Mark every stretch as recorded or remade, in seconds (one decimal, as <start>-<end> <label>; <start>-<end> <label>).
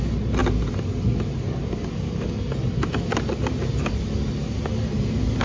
0.0-5.4 recorded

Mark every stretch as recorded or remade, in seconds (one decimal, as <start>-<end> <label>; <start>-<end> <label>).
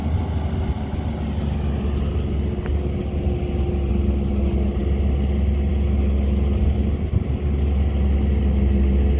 0.0-9.2 recorded